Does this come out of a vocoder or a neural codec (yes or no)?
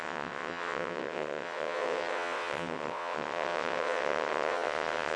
yes